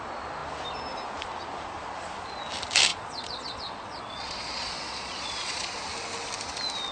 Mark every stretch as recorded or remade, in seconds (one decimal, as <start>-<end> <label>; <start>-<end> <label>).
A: 0.0-2.9 recorded; 2.9-5.7 remade; 5.7-6.9 recorded